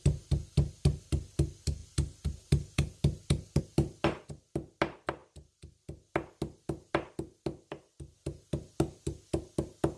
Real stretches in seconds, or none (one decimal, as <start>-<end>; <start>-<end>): 0.0-10.0